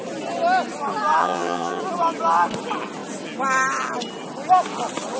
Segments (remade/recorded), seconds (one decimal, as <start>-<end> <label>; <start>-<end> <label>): 0.0-1.2 recorded; 1.2-1.8 remade; 1.8-5.2 recorded